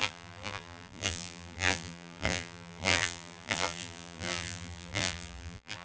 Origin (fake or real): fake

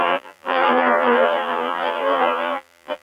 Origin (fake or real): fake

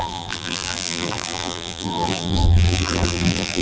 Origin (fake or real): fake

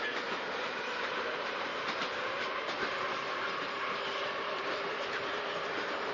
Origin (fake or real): fake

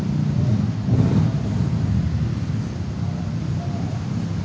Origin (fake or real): fake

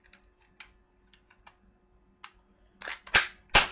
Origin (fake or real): real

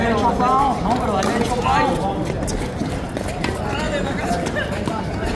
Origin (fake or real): real